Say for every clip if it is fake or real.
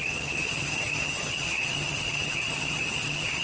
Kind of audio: fake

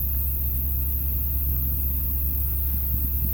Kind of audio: real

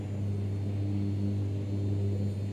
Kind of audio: real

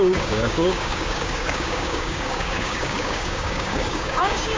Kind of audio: fake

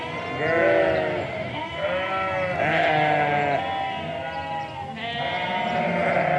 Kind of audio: real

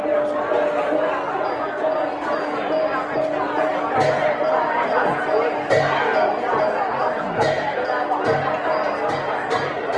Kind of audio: real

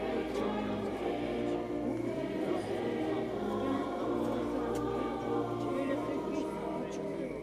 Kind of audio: real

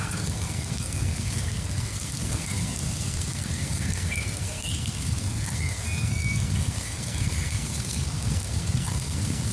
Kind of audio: fake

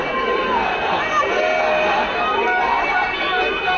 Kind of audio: real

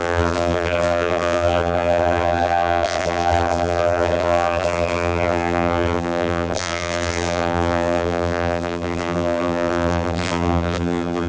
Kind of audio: fake